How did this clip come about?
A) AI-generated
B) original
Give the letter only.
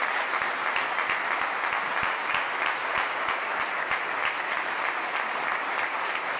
B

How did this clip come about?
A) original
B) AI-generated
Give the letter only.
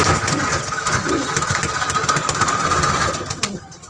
A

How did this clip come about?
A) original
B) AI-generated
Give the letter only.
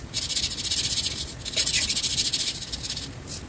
A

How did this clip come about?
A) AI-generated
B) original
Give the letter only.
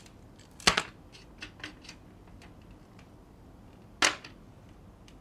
B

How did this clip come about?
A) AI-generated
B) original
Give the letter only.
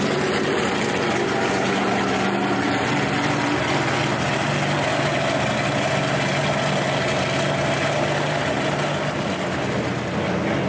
B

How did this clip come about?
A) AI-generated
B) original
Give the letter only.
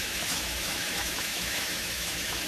A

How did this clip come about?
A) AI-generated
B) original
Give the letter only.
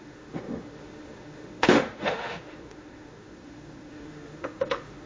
A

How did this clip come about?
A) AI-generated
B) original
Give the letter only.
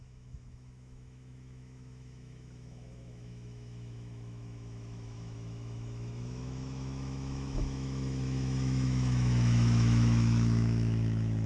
A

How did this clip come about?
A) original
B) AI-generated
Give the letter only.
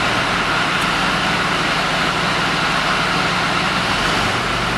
A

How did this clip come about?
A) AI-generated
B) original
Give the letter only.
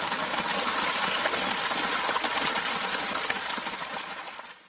B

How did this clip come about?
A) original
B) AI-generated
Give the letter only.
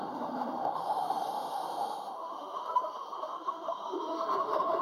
B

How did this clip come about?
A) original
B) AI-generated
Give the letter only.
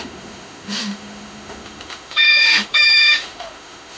B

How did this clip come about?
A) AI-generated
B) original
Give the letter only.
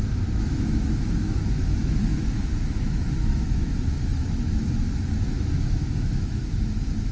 A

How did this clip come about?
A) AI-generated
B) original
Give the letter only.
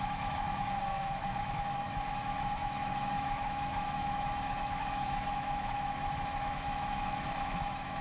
A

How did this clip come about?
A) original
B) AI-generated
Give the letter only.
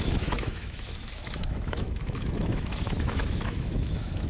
B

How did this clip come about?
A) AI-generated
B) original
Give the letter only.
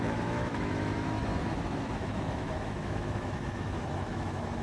A